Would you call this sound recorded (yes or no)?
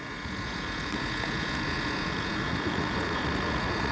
no